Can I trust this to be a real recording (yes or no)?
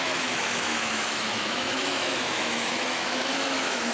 no